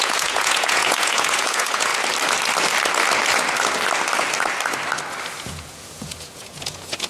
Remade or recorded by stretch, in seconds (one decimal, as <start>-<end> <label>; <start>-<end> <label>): 0.0-1.9 remade; 1.9-5.4 recorded; 5.4-7.1 remade